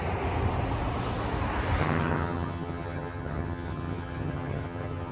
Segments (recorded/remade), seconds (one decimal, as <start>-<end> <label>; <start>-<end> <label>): 0.0-1.8 recorded; 1.8-5.1 remade